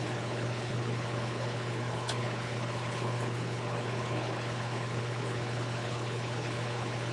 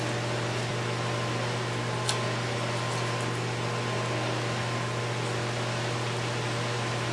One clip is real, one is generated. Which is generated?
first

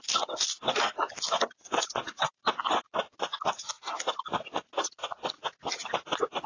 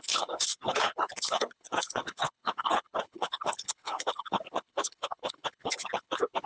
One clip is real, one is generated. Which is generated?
second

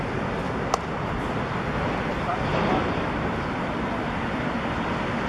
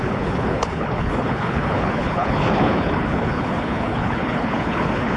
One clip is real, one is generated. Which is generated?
second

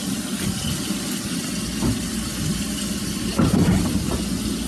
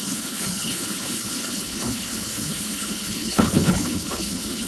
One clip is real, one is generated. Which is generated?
second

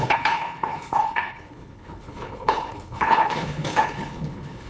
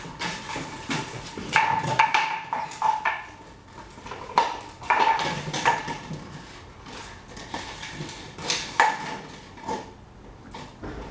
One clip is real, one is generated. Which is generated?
first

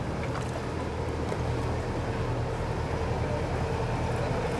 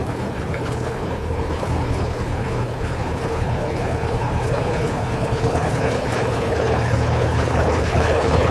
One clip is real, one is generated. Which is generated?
second